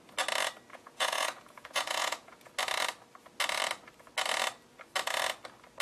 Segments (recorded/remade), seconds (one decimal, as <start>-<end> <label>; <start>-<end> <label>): 0.0-0.7 recorded; 0.7-2.5 remade; 2.5-5.8 recorded